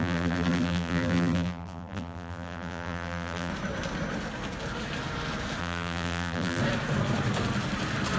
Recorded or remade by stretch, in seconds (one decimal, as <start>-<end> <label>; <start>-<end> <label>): 0.0-3.5 remade; 3.5-5.6 recorded; 5.6-6.6 remade; 6.6-8.2 recorded